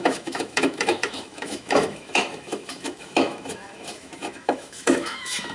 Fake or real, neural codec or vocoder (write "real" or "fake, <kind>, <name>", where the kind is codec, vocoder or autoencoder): fake, autoencoder, DAC-VAE